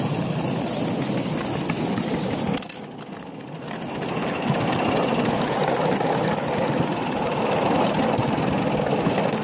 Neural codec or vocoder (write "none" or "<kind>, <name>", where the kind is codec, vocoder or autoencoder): none